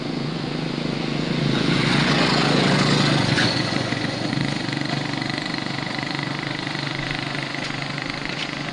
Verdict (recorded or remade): remade